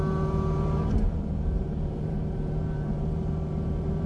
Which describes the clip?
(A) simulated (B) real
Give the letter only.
A